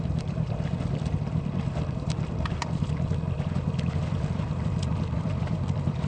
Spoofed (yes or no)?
yes